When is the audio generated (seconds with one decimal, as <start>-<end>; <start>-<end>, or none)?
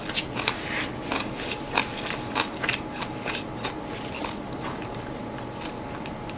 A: 1.1-4.6